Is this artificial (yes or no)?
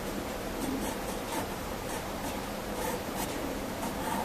yes